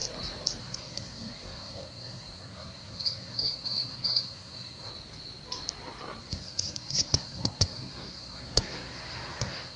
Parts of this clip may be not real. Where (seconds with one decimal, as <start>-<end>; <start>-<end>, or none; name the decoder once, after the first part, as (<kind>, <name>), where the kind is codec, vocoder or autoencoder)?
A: 0.6-4.9 (codec, SNAC); 6.2-9.8